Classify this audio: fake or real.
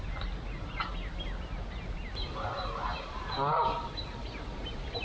real